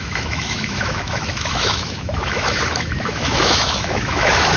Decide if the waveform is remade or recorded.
remade